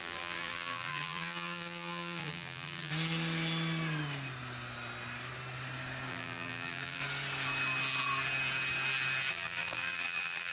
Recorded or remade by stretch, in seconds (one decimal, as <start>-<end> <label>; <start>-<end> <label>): 0.0-2.9 remade; 2.9-6.1 recorded; 6.1-7.0 remade; 7.0-9.3 recorded; 9.3-10.5 remade